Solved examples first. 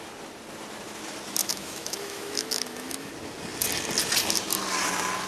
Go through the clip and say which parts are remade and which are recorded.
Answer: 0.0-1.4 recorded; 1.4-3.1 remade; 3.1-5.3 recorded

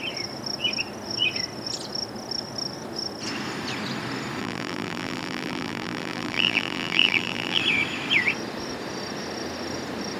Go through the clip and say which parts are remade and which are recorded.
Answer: 0.0-4.4 recorded; 4.4-7.6 remade; 7.6-10.2 recorded